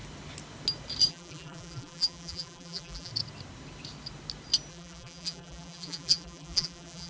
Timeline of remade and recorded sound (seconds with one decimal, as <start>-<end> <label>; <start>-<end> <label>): 0.0-1.1 recorded; 1.1-3.1 remade; 3.1-4.7 recorded; 4.7-7.1 remade